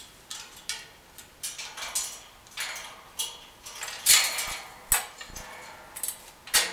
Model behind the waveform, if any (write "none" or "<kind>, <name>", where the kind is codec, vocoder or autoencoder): none